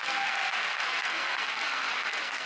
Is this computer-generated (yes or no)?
yes